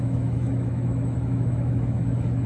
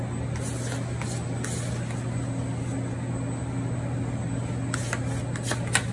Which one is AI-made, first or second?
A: first